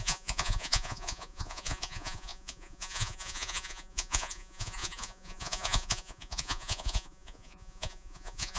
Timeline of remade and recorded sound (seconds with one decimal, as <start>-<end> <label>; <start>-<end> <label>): 0.0-8.6 remade